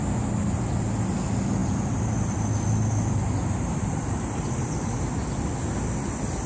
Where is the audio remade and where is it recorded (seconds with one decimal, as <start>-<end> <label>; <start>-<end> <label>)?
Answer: 0.0-6.5 recorded